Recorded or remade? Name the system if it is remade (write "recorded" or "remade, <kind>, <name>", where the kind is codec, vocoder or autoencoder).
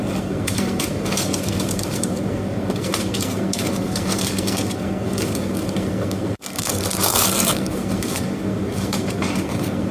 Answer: remade, codec, SNAC